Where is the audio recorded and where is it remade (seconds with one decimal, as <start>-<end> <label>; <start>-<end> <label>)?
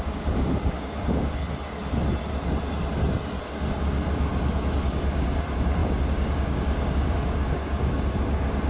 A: 0.0-1.4 remade; 1.4-3.4 recorded; 3.4-4.3 remade; 4.3-4.9 recorded; 4.9-8.7 remade